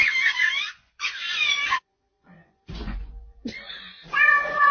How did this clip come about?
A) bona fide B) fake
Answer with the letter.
B